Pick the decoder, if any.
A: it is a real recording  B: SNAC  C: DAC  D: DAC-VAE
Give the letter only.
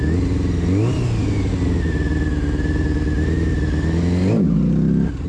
A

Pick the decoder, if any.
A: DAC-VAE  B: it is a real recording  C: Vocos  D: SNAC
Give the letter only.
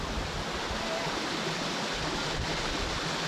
B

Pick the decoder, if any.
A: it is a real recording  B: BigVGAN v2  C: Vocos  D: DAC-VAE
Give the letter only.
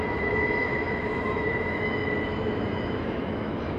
D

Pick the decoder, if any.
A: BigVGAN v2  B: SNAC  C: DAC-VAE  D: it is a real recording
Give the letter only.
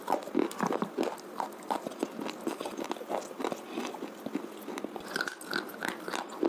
D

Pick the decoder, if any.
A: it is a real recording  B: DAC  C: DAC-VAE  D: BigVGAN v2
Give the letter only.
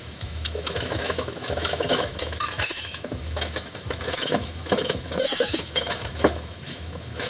C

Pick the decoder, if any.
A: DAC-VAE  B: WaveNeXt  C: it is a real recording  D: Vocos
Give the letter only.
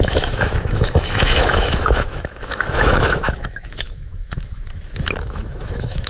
A